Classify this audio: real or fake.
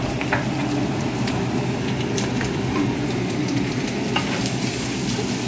fake